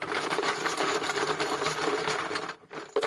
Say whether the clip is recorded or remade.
remade